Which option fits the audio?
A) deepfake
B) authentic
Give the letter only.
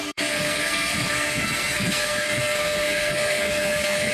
A